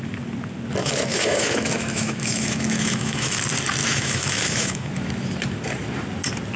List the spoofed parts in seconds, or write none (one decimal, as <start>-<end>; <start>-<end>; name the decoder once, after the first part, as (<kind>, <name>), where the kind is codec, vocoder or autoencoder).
0.8-3.4 (autoencoder, DAC-VAE); 3.8-4.9